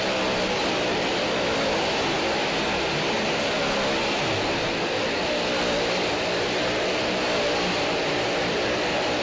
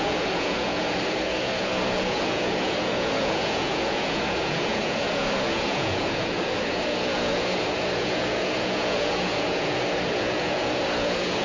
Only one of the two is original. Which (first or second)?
first